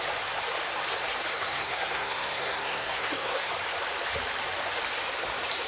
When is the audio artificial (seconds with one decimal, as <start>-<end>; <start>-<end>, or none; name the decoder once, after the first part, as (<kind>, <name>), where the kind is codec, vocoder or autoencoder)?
1.3-3.5 (codec, SNAC)